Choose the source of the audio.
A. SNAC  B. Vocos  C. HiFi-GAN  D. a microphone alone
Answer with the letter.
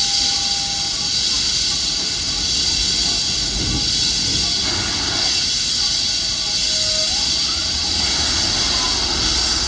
D